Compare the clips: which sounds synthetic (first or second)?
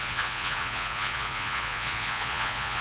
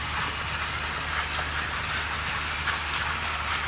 first